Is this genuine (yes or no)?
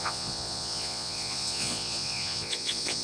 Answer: no